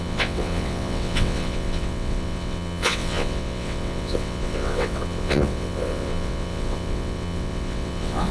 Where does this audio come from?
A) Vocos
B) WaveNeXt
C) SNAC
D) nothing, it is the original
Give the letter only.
B